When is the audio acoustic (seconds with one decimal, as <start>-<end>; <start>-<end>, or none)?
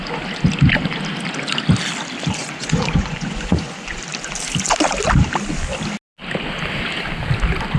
0.0-2.4; 4.0-7.8